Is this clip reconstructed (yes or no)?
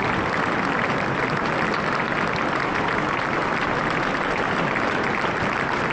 no